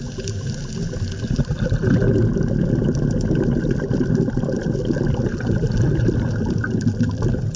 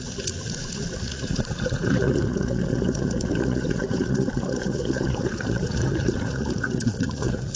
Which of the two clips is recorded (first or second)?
first